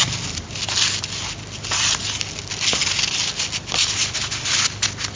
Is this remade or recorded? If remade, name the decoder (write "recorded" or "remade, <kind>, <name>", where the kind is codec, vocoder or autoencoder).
recorded